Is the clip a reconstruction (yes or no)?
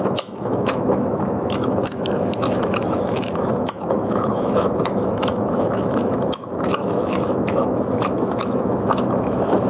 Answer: yes